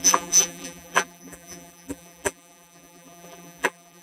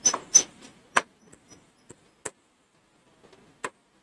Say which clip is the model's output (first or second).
first